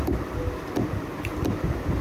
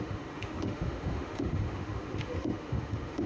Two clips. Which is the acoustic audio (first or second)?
first